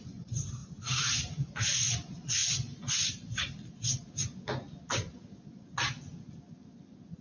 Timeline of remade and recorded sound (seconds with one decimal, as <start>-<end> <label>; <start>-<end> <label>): 0.0-2.4 recorded; 2.4-4.1 remade; 4.1-7.2 recorded